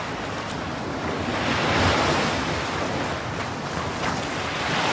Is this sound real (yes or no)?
yes